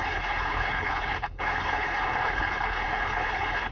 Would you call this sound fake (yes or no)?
yes